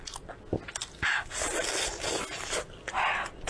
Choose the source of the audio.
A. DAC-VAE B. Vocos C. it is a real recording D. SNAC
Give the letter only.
C